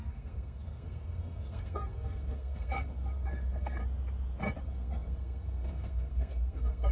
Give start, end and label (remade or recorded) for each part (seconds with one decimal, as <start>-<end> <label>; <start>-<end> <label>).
0.0-3.8 remade; 3.8-4.6 recorded; 4.6-6.9 remade